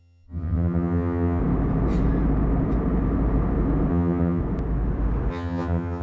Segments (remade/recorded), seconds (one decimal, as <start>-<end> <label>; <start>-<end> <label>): 0.0-1.4 remade; 1.4-3.9 recorded; 3.9-4.4 remade; 4.4-5.3 recorded; 5.3-6.0 remade